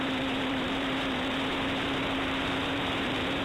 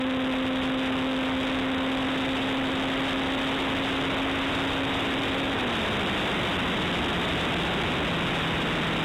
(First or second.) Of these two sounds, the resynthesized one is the first